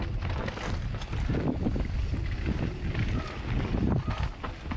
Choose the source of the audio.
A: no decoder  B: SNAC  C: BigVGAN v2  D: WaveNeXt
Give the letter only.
A